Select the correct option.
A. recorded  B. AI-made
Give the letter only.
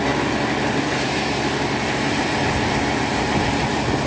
A